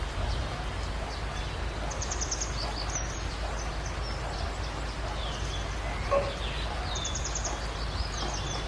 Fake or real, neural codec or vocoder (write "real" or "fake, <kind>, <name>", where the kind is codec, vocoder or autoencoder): real